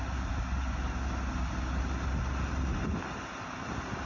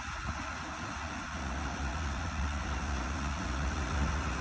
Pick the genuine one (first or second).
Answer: first